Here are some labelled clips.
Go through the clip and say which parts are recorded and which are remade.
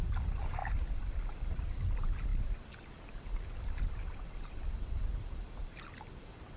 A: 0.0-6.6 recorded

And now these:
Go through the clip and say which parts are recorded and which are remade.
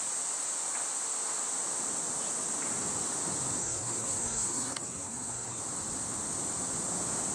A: 0.0-3.6 recorded; 3.6-5.6 remade; 5.6-7.3 recorded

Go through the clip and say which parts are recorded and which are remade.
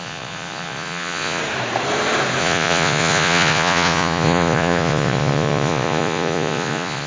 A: 0.0-1.4 remade; 1.4-2.4 recorded; 2.4-7.1 remade